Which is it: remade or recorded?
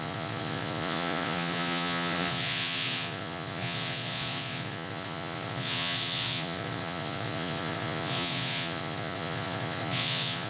remade